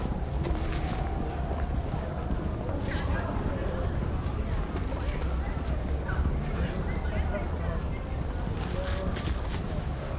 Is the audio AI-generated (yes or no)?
no